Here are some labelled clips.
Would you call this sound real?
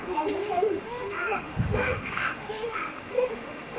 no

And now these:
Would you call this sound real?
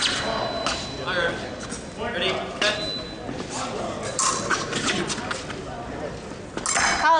yes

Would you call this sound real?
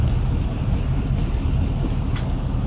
yes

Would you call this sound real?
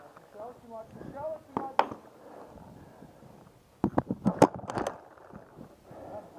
yes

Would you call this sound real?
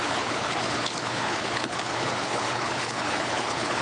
no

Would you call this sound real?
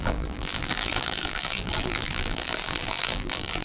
no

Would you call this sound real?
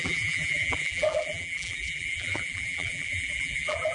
no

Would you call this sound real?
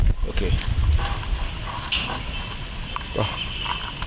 yes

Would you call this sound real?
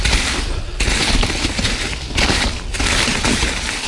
yes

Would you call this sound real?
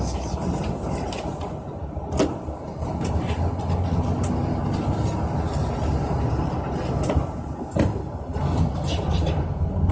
yes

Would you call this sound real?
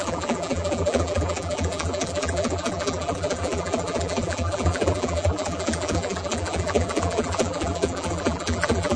no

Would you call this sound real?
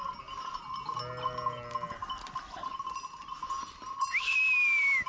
yes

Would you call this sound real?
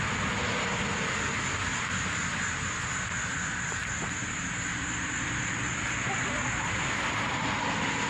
yes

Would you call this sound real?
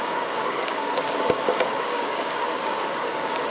no